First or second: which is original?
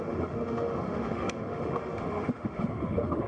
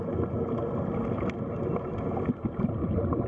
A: second